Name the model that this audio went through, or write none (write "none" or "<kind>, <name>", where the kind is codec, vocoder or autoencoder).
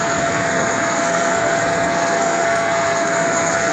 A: codec, SNAC